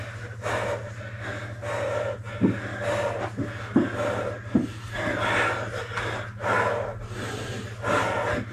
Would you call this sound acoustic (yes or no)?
yes